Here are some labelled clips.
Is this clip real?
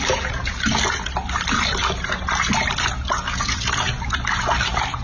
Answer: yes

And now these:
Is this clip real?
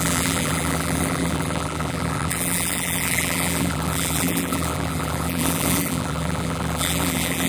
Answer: no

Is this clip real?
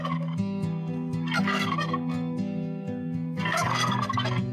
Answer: no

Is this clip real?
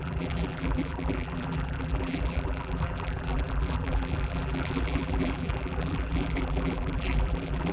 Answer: no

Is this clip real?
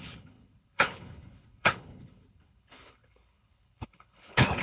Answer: no